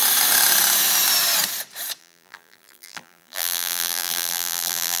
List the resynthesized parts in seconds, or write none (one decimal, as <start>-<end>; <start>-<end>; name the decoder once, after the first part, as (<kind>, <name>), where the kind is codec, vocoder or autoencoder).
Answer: 2.0-5.0 (vocoder, BigVGAN v2)